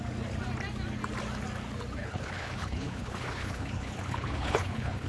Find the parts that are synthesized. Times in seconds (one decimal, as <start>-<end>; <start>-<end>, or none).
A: 2.0-5.1